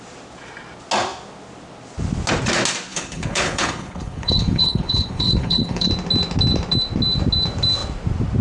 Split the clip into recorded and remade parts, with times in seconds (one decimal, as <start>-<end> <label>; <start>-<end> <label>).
0.0-2.9 recorded; 2.9-5.9 remade; 5.9-8.4 recorded